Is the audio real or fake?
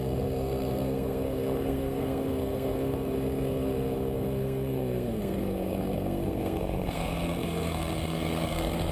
fake